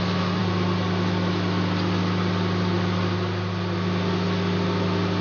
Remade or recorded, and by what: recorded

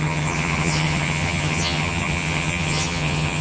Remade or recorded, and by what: remade, vocoder, HiFi-GAN